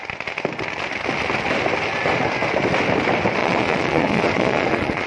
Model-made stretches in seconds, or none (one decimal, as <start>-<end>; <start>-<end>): 3.4-5.1